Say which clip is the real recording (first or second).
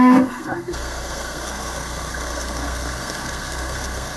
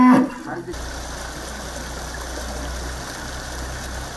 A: second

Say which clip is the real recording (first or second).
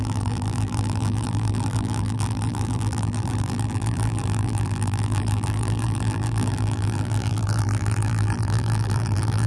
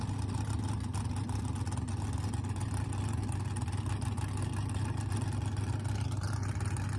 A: second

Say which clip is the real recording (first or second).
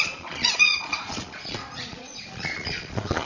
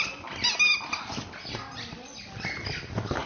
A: second